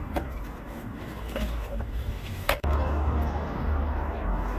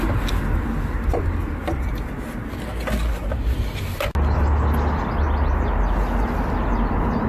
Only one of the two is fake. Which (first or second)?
first